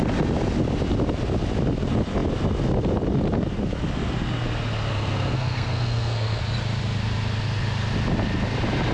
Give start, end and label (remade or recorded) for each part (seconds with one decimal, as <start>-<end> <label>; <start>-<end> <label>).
0.0-4.9 recorded; 4.9-6.4 remade; 6.4-8.9 recorded